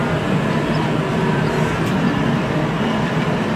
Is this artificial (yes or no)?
no